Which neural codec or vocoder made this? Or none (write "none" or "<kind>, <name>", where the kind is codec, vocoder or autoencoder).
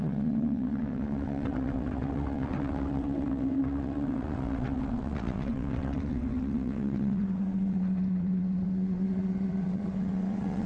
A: vocoder, WaveNeXt